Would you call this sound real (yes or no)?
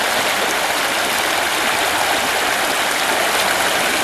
yes